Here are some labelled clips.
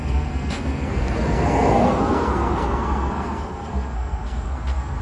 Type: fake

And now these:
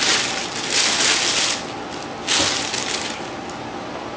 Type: real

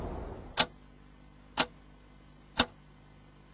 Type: real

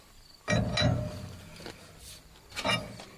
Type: real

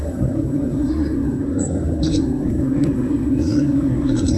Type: fake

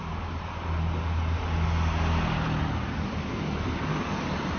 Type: real